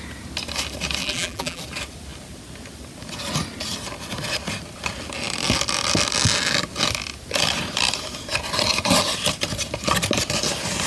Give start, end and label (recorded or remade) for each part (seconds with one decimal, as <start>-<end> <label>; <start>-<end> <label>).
0.0-1.0 recorded; 1.0-1.6 remade; 1.6-10.9 recorded